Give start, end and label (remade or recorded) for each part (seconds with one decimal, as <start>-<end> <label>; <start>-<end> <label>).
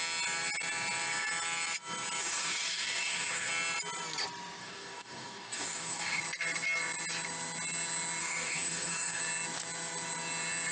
0.0-2.2 recorded; 2.2-3.5 remade; 3.5-4.6 recorded; 4.6-6.2 remade; 6.2-8.2 recorded; 8.2-9.2 remade; 9.2-10.7 recorded